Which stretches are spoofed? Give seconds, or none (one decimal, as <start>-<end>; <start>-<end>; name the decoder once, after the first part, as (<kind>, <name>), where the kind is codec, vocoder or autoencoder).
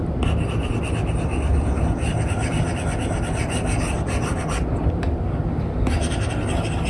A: 0.0-0.8 (vocoder, BigVGAN v2); 1.5-5.0